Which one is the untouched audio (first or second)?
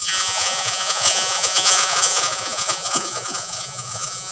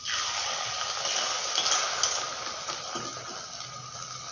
second